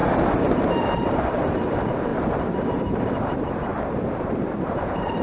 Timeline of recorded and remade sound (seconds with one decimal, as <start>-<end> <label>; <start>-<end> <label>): 0.0-1.0 recorded; 1.0-5.2 remade

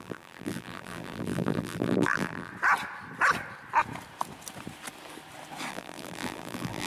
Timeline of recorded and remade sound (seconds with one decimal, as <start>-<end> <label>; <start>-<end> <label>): 0.0-2.5 remade; 2.5-5.7 recorded; 5.7-6.9 remade

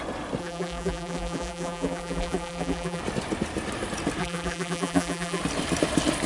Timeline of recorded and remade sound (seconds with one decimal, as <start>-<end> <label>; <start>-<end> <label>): 0.0-0.4 recorded; 0.4-3.0 remade; 3.0-4.2 recorded; 4.2-5.4 remade; 5.4-6.3 recorded

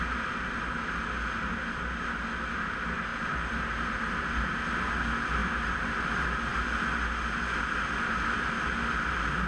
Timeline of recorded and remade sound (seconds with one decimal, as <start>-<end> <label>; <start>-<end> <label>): 0.0-3.1 recorded; 3.1-4.7 remade; 4.7-5.4 recorded; 5.4-6.0 remade; 6.0-9.5 recorded

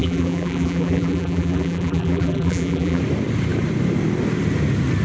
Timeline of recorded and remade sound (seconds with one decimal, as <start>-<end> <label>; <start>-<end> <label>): 0.0-3.0 remade; 3.0-5.0 recorded

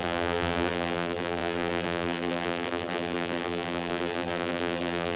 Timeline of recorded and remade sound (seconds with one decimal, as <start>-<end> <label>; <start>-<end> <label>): 0.0-5.2 remade

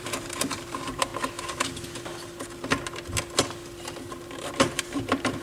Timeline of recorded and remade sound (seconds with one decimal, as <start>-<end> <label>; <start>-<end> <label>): 0.0-1.1 remade; 1.1-4.3 recorded; 4.3-5.4 remade

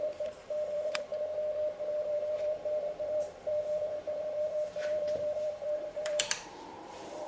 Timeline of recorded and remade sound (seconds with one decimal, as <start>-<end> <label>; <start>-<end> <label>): 0.0-1.1 remade; 1.1-1.8 recorded; 1.8-7.3 remade